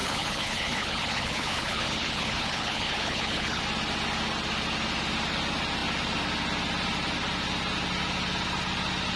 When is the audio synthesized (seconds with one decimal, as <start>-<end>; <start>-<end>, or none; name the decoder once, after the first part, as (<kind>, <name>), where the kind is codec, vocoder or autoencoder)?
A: 0.0-3.6 (codec, HILCodec)